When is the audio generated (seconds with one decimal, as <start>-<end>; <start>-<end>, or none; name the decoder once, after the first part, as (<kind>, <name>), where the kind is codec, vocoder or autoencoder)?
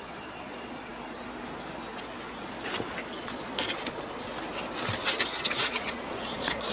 0.0-0.9 (vocoder, Vocos); 3.2-4.3; 5.5-6.7